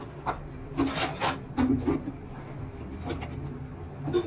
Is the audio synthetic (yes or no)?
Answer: no